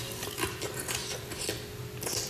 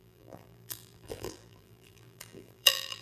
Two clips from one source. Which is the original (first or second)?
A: first